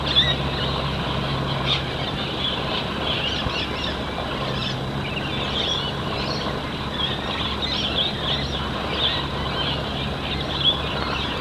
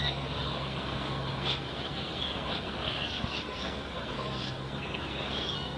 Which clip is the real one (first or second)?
first